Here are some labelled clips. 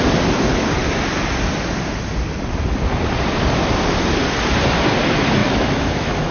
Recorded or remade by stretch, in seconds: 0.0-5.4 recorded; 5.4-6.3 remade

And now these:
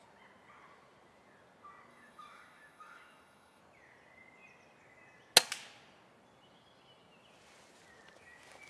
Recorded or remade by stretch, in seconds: 0.0-1.9 recorded; 1.9-3.6 remade; 3.6-8.7 recorded

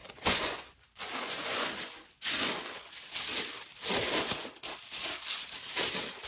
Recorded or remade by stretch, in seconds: 0.0-2.9 remade; 2.9-6.3 recorded

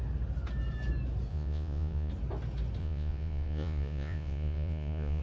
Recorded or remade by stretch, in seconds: 0.0-1.3 recorded; 1.3-2.1 remade; 2.1-2.8 recorded; 2.8-5.2 remade

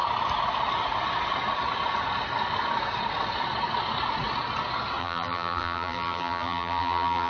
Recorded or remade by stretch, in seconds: 0.0-5.0 recorded; 5.0-7.3 remade

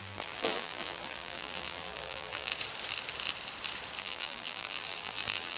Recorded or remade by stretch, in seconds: 0.0-2.5 remade; 2.5-4.0 recorded; 4.0-5.6 remade